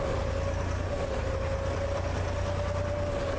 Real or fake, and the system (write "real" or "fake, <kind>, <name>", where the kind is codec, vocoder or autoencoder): real